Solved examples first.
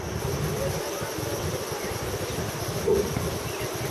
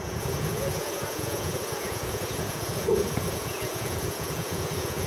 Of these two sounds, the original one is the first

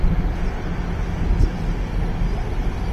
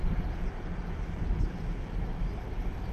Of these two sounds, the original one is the first